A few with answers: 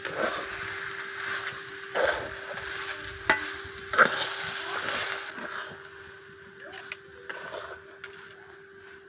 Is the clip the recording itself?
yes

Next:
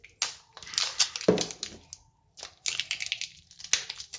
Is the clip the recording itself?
yes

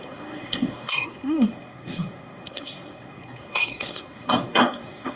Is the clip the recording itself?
no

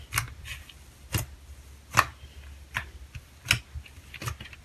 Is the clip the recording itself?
yes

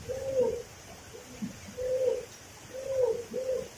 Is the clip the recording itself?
yes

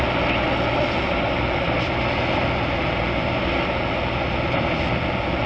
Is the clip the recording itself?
yes